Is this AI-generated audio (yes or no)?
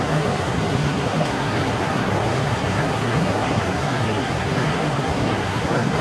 yes